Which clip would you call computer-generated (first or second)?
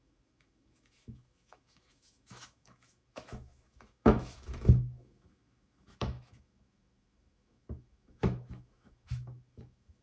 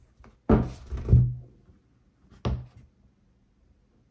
first